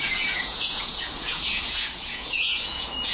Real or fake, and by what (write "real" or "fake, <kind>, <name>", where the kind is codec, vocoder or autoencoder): fake, vocoder, Vocos